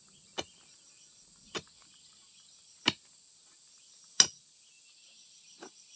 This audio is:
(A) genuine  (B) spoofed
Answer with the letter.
A